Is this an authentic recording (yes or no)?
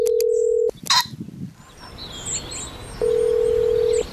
yes